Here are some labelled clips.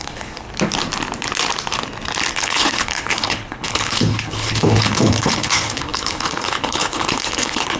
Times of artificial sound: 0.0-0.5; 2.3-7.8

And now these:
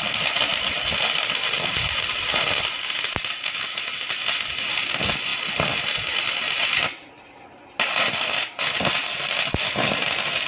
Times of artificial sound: none

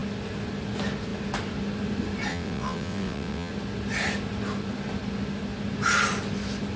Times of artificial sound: 2.3-3.5

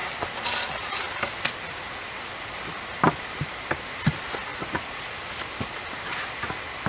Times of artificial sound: 4.5-5.4

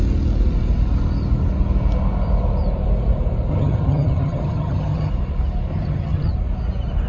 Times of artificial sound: 3.5-5.1; 5.7-6.3

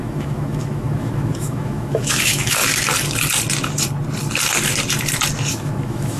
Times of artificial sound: 0.0-2.6; 5.5-6.2

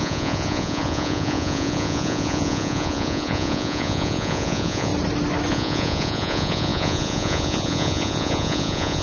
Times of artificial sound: 0.0-4.9; 5.5-9.0